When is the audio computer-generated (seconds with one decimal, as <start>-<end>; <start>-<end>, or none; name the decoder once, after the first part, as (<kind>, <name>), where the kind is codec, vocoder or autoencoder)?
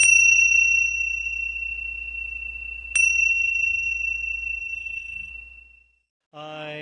3.3-3.9 (codec, SNAC); 4.6-5.3